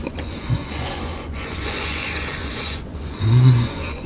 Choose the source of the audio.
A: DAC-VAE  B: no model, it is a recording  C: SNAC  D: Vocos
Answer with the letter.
D